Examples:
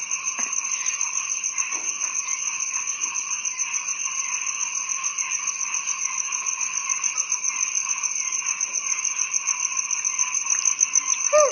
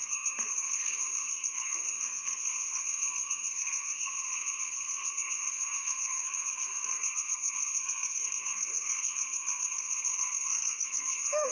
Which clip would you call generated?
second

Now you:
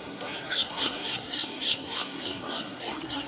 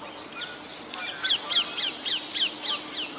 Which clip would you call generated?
first